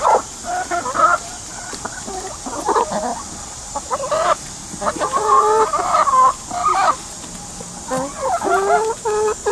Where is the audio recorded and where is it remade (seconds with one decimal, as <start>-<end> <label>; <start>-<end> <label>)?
0.0-3.1 recorded; 3.1-5.8 remade; 5.8-9.5 recorded